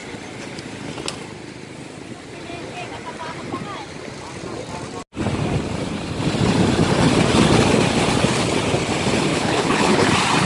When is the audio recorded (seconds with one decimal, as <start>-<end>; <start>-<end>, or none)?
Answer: 0.0-9.3; 10.1-10.5